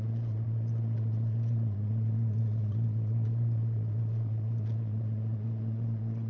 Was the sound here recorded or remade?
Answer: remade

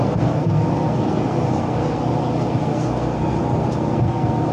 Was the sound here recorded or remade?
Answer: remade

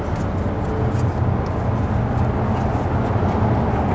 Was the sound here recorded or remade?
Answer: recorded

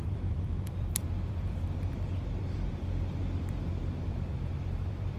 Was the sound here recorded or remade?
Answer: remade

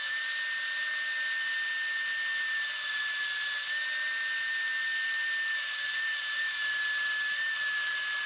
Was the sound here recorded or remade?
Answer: recorded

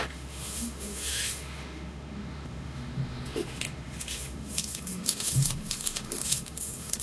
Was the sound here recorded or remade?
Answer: remade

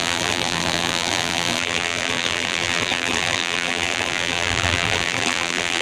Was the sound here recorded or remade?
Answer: remade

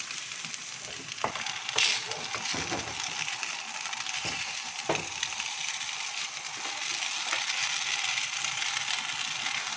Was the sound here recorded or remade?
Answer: recorded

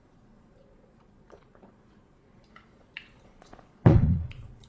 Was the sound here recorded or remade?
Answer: remade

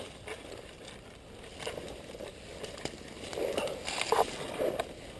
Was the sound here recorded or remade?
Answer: recorded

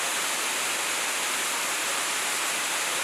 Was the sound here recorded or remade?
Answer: recorded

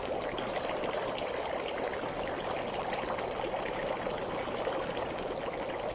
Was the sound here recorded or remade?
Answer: recorded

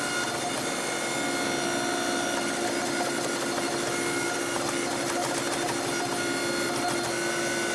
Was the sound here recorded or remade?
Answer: recorded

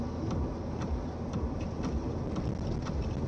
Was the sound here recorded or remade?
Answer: recorded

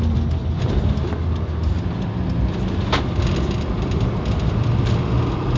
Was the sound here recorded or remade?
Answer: remade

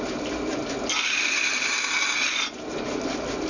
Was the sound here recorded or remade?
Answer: recorded